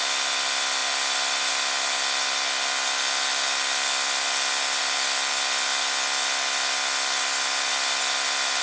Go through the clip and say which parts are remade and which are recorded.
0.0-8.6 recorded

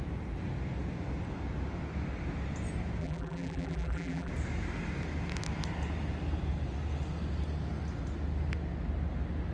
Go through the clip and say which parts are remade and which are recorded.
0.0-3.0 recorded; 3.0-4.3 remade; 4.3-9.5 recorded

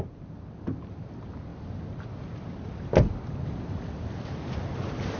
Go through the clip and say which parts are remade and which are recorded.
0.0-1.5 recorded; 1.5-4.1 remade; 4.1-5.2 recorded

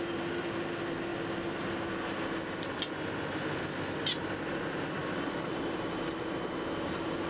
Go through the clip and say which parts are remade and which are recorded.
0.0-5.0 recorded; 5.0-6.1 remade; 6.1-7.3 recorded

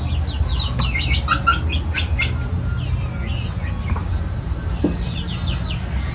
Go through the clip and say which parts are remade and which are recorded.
0.0-6.1 recorded

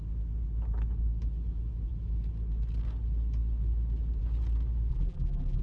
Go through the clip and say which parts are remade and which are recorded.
0.0-4.9 recorded; 4.9-5.6 remade

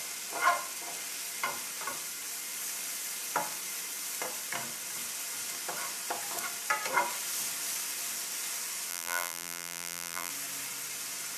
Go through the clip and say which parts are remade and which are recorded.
0.0-8.9 recorded; 8.9-10.3 remade; 10.3-11.4 recorded

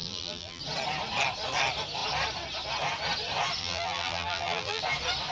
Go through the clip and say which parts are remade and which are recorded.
0.0-0.6 remade; 0.6-3.6 recorded; 3.6-4.8 remade; 4.8-5.3 recorded